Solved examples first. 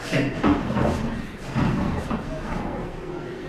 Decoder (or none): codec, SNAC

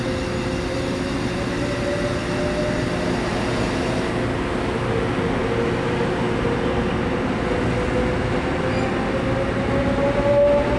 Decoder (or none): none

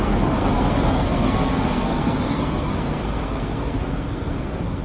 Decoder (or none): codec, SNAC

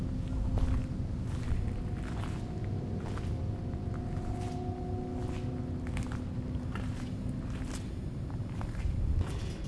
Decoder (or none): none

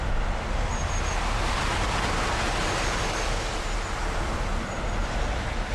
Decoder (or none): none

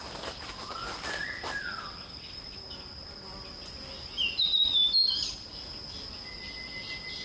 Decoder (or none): none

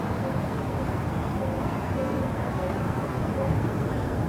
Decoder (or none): codec, SNAC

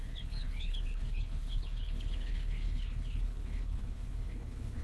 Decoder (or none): codec, HILCodec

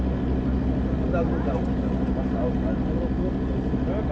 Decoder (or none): none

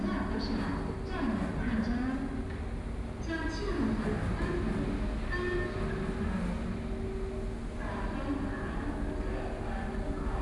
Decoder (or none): none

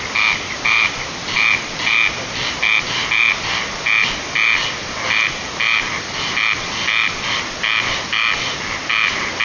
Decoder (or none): none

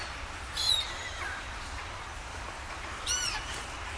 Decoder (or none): none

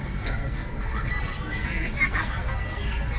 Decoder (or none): codec, SNAC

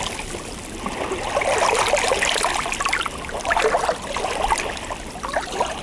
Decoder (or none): none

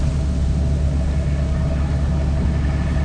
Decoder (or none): none